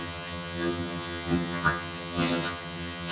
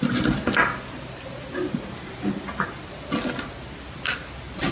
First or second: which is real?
second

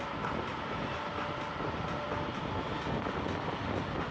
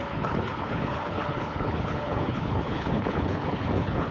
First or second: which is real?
first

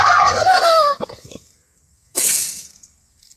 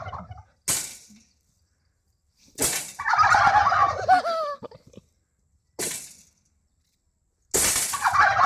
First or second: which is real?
second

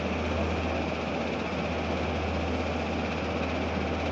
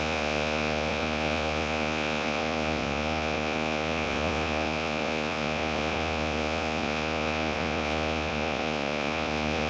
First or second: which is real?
first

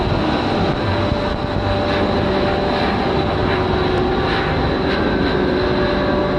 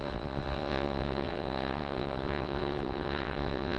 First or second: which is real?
first